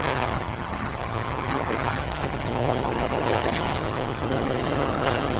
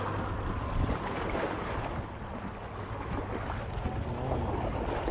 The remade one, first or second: first